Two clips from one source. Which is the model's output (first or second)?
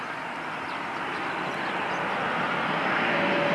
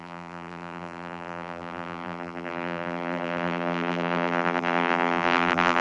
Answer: second